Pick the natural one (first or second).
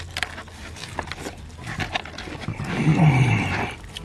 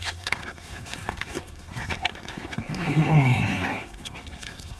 first